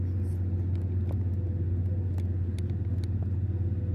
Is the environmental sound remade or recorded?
recorded